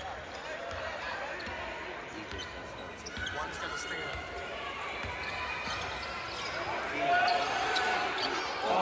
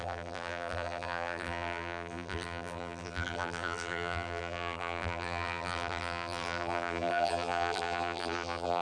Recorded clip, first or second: first